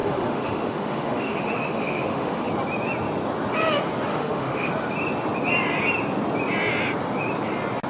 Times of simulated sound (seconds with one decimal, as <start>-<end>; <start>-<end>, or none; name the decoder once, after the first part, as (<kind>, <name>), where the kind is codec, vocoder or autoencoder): 0.0-2.5 (autoencoder, DAC-VAE); 4.1-4.7